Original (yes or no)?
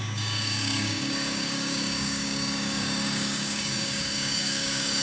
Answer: no